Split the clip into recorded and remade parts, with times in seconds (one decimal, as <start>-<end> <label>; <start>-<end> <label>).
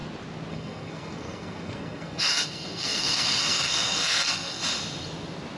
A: 0.0-0.5 recorded; 0.5-4.6 remade; 4.6-5.6 recorded